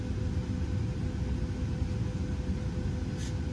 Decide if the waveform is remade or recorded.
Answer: recorded